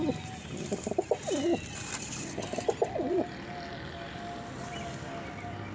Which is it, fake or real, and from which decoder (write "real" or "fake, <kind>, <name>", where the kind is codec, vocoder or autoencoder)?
real